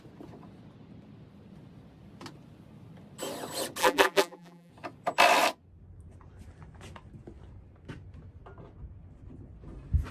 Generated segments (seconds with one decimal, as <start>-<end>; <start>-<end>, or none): 3.8-4.7